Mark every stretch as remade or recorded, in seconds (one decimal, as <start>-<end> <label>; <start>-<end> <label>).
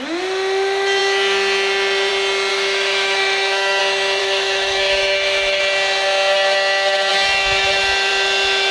0.0-2.5 recorded; 2.5-3.8 remade; 3.8-4.2 recorded; 4.2-5.6 remade; 5.6-8.7 recorded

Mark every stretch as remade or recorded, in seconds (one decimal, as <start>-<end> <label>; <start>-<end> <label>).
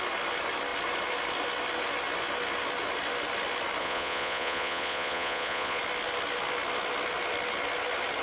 0.0-3.8 recorded; 3.8-5.8 remade; 5.8-8.2 recorded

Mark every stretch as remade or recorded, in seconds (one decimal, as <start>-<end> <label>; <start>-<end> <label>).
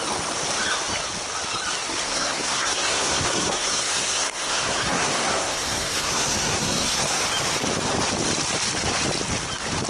0.0-2.0 recorded; 2.0-7.2 remade; 7.2-9.9 recorded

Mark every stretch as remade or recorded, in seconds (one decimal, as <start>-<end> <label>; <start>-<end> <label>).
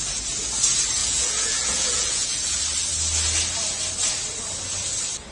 0.0-1.0 recorded; 1.0-2.6 remade; 2.6-5.3 recorded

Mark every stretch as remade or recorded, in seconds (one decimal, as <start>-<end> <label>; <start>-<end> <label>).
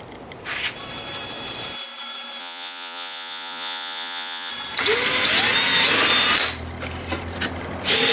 0.0-2.4 recorded; 2.4-4.5 remade; 4.5-8.1 recorded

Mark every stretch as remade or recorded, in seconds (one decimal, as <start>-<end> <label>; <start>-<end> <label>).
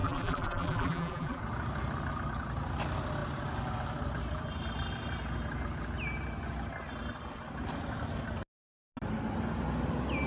0.0-1.4 remade; 1.4-10.3 recorded